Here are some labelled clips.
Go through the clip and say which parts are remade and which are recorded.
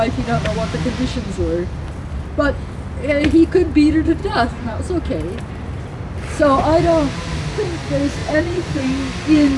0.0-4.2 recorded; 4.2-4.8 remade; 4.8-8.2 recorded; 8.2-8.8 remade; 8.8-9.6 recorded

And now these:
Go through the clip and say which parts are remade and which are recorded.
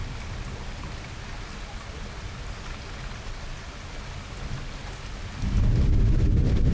0.0-6.7 recorded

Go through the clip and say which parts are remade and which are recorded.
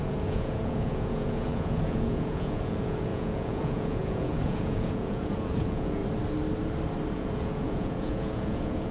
0.0-6.0 remade; 6.0-7.1 recorded; 7.1-8.9 remade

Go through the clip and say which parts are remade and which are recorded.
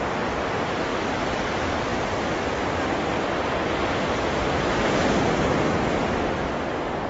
0.0-7.1 recorded